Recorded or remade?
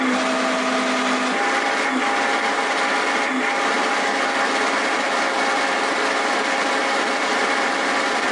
recorded